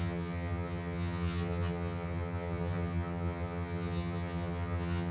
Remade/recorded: remade